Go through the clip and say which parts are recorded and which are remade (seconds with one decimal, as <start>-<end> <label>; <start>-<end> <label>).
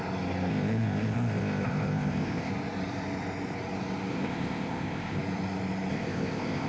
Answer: 0.0-0.5 recorded; 0.5-2.5 remade; 2.5-4.1 recorded; 4.1-5.2 remade; 5.2-5.9 recorded; 5.9-6.7 remade